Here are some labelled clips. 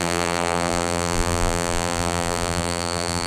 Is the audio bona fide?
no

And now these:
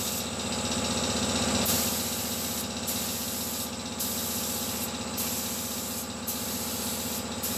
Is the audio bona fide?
yes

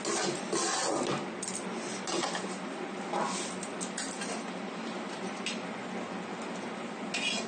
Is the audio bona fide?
yes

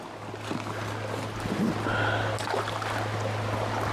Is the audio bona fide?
yes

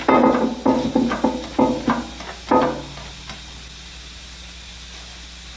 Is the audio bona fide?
yes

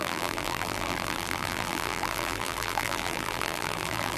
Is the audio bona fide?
no